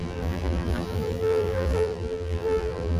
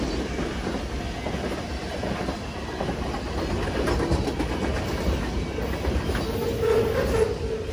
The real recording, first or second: second